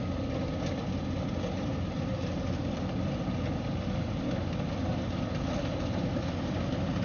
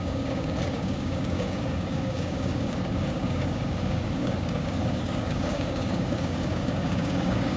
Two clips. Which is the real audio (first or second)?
first